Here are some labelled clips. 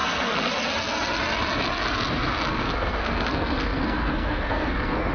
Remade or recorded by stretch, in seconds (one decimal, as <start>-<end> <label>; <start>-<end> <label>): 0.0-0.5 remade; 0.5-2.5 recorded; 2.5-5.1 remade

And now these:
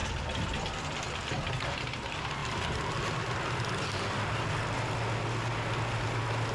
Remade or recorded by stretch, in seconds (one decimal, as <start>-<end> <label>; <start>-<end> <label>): 0.0-6.5 recorded

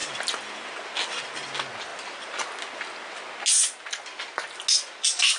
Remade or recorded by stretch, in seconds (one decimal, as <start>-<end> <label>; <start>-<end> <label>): 0.0-5.4 recorded